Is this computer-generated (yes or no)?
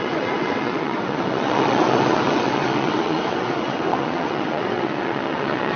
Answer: yes